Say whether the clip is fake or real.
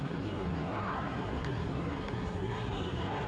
fake